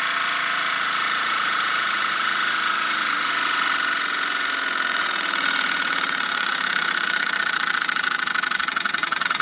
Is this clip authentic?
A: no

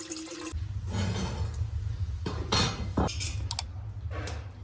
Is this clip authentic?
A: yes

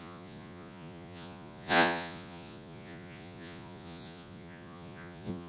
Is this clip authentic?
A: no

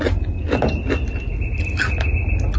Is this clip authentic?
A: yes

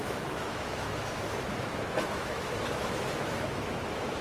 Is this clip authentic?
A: no